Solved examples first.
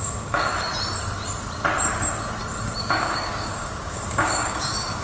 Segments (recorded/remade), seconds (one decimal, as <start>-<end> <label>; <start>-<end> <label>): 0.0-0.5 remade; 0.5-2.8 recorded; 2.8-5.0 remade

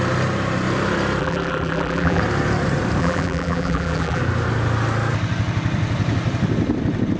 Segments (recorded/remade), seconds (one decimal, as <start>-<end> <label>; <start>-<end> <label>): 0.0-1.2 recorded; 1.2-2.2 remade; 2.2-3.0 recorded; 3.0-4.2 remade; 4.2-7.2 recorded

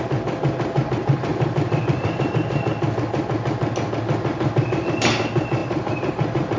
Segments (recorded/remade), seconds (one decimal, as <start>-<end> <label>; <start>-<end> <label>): 0.0-1.3 recorded; 1.3-2.3 remade; 2.3-6.6 recorded

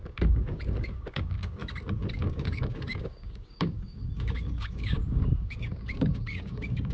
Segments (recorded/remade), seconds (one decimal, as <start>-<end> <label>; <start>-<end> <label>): 0.0-1.6 remade; 1.6-2.1 recorded; 2.1-6.9 remade